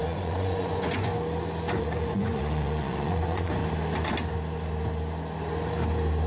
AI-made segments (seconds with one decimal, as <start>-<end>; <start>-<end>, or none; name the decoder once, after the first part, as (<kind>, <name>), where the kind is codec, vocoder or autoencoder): 0.0-1.1 (vocoder, Vocos); 1.7-3.6